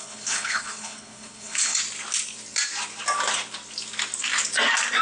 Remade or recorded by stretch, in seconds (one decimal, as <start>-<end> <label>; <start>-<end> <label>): 0.0-1.8 remade; 1.8-5.0 recorded